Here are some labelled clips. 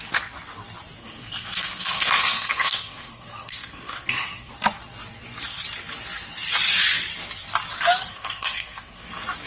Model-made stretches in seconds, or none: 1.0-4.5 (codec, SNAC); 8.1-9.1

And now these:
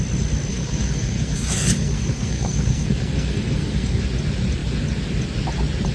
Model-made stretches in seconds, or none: 0.5-4.0 (codec, SNAC)

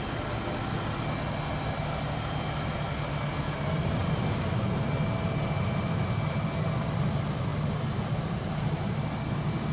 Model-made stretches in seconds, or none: none

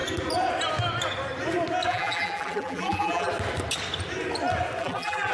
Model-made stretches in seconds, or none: 1.9-3.3 (vocoder, BigVGAN v2); 4.8-5.3